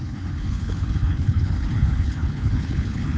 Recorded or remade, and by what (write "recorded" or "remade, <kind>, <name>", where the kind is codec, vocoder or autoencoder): remade, codec, HILCodec